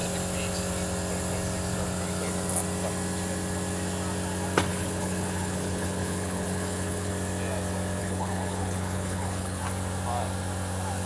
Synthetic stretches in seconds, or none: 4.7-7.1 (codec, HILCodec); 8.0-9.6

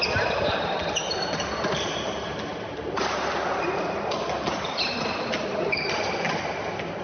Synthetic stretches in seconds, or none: none

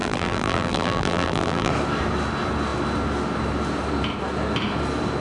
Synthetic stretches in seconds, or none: 0.0-1.7 (vocoder, BigVGAN v2)

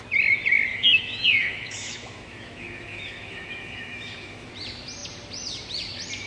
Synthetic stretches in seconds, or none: 0.7-4.5 (autoencoder, DAC-VAE)

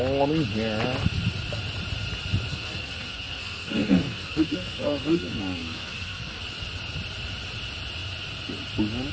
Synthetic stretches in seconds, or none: 2.5-6.4 (codec, SNAC)

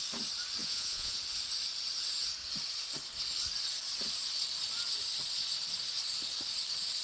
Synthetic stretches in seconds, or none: 0.6-1.2 (vocoder, Vocos)

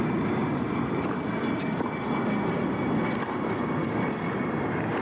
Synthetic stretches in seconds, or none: none

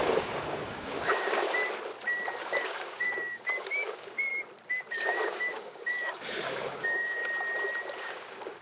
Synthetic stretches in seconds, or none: 0.0-1.6 (codec, DAC); 2.4-4.3; 4.9-7.2; 8.0-8.6